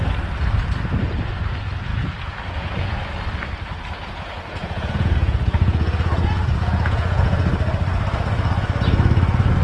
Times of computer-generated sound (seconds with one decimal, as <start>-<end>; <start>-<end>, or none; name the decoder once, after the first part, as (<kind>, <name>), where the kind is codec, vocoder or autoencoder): 1.9-3.2 (vocoder, Vocos); 4.0-7.4

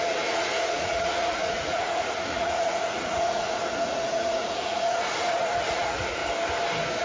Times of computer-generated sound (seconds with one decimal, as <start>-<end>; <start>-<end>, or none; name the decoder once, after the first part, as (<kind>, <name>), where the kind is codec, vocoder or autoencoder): 0.0-6.2 (vocoder, Vocos)

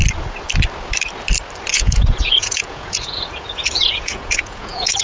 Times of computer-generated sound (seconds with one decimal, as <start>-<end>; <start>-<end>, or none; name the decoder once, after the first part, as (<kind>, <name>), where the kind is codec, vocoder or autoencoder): 1.7-5.0 (vocoder, Vocos)

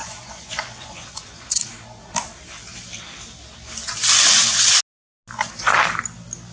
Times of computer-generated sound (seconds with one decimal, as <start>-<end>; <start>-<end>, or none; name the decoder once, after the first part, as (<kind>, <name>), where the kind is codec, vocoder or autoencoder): 0.0-1.7 (vocoder, Vocos)

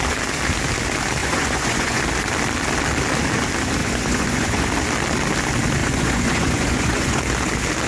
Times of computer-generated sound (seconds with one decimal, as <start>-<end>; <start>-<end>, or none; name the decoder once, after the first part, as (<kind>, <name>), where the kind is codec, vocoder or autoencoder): 1.2-2.0 (vocoder, Vocos); 3.8-4.7; 5.8-7.2

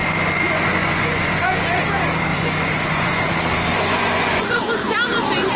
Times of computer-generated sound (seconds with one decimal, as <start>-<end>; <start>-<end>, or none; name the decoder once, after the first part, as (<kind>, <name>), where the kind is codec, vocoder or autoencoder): 0.0-1.8 (vocoder, Vocos); 2.3-3.3; 3.7-4.7

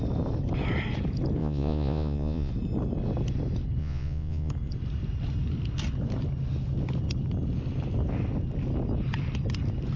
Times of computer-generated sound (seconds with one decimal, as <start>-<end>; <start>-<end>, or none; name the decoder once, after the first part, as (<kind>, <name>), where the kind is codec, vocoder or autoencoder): 1.4-2.5 (vocoder, Vocos); 3.8-4.5

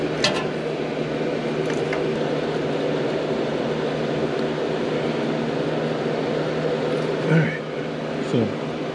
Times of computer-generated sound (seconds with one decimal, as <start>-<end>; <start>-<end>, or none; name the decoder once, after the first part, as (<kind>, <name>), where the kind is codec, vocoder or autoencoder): none